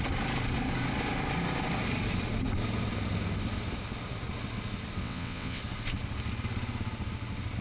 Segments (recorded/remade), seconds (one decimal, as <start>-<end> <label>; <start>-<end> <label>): 0.0-5.0 recorded; 5.0-5.6 remade; 5.6-7.6 recorded